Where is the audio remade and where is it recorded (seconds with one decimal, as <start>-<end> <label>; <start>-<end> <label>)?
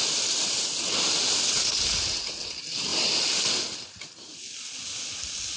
0.0-5.6 recorded